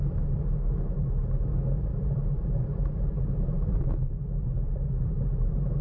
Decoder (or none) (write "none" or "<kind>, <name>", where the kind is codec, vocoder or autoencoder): vocoder, BigVGAN v2